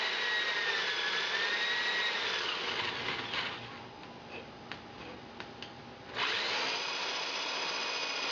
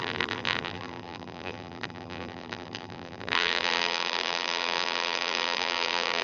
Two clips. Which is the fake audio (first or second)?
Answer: second